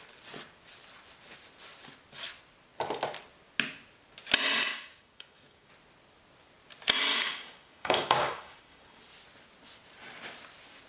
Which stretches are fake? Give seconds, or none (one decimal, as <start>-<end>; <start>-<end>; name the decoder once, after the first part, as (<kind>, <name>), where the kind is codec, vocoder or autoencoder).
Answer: 4.7-5.7 (codec, DAC); 7.1-9.0